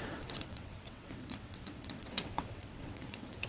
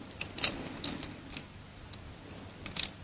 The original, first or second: second